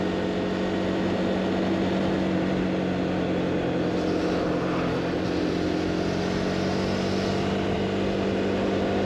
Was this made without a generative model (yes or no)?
yes